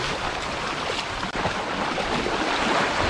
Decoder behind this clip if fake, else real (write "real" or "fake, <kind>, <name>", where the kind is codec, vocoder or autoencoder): real